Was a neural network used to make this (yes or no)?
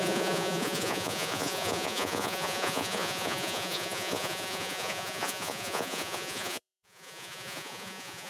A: yes